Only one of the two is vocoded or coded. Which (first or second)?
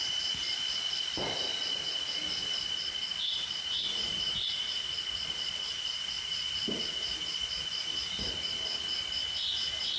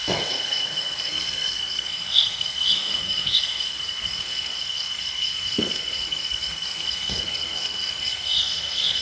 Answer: second